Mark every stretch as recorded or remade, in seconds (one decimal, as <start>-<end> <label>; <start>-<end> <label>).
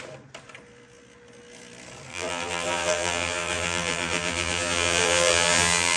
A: 0.0-2.1 recorded; 2.1-6.0 remade